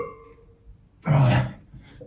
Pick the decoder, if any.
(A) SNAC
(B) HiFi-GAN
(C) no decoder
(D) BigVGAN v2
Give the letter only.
C